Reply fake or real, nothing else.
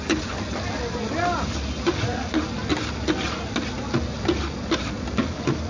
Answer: real